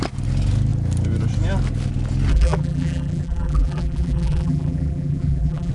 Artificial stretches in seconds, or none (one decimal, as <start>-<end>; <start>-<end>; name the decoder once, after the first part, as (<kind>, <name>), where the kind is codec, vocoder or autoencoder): 2.3-5.7 (vocoder, BigVGAN v2)